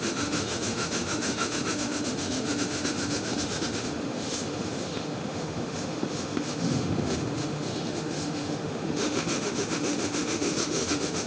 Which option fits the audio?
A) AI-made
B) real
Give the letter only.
A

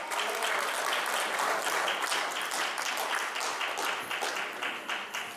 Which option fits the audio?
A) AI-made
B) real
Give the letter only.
B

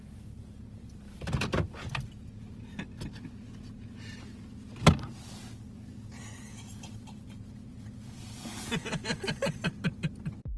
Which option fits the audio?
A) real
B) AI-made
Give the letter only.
A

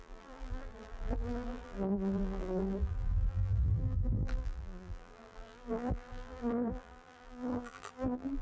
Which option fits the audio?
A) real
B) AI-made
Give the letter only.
B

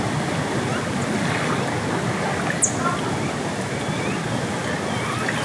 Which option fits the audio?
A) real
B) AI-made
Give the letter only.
A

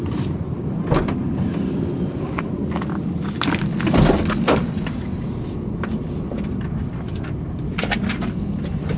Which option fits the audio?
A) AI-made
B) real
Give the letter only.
B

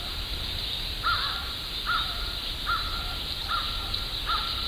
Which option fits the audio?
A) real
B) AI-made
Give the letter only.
A